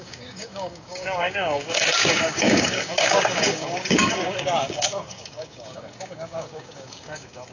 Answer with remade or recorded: remade